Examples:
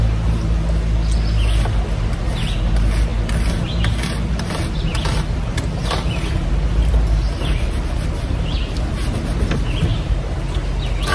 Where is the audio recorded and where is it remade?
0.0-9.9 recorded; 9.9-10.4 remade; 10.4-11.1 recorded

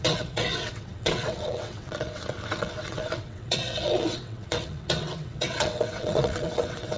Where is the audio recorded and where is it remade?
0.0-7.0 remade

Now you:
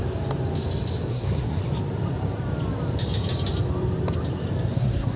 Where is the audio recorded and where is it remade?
0.0-1.1 recorded; 1.1-1.6 remade; 1.6-4.7 recorded; 4.7-5.2 remade

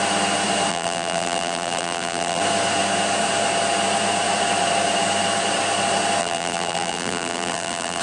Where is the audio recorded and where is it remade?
0.0-0.7 recorded; 0.7-2.4 remade; 2.4-6.2 recorded; 6.2-8.0 remade